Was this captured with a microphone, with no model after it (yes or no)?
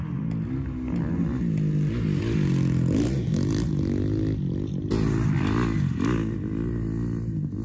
yes